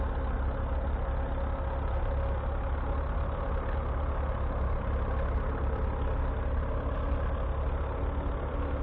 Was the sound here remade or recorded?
recorded